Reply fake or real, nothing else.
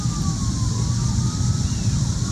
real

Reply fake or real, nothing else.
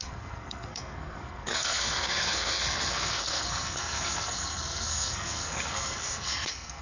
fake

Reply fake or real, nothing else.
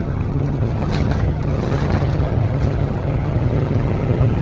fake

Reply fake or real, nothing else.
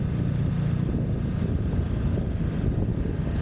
fake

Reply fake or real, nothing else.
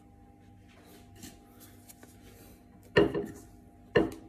real